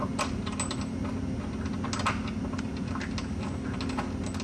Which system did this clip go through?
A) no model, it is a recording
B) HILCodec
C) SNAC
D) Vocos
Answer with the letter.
A